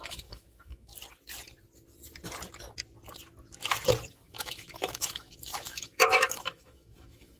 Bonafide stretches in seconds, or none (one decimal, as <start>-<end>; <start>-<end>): 0.9-4.1